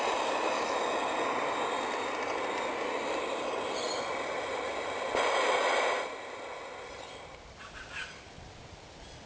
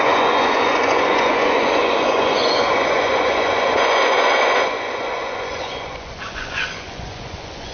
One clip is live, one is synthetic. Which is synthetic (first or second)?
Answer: second